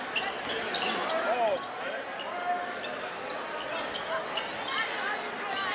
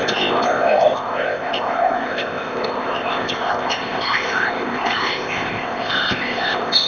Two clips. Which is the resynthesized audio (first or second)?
second